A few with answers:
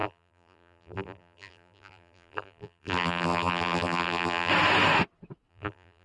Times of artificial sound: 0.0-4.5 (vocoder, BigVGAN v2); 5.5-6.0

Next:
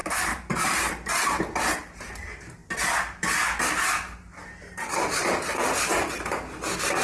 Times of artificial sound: 0.0-0.9 (vocoder, BigVGAN v2)

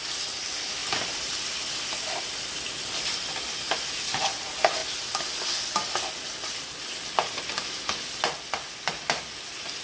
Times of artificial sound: none

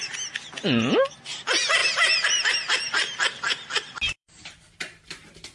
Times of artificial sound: 1.8-5.1 (vocoder, BigVGAN v2)

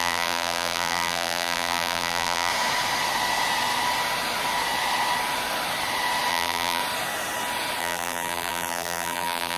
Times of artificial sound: 0.0-2.5 (vocoder, BigVGAN v2); 6.3-6.8; 7.8-9.6

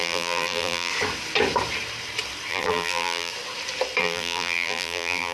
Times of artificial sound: 0.0-0.9 (vocoder, BigVGAN v2); 2.5-3.3; 4.0-5.3